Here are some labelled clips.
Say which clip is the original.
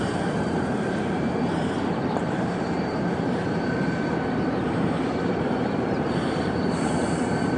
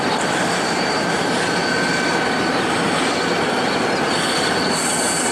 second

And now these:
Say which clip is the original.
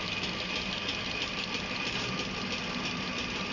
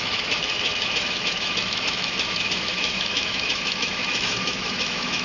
first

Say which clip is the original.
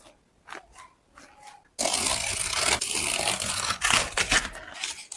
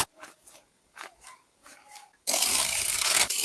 first